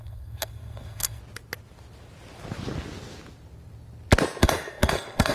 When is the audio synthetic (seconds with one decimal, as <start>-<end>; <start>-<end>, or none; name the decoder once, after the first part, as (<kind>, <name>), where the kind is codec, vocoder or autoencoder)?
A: 0.0-1.2 (codec, SNAC); 4.4-5.3